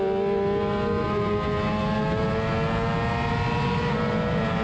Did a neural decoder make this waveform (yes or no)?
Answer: no